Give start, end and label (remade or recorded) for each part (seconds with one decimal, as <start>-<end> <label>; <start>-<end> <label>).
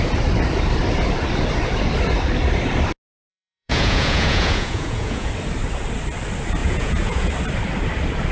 0.0-3.3 recorded; 3.3-5.3 remade; 5.3-6.6 recorded; 6.6-7.3 remade; 7.3-8.3 recorded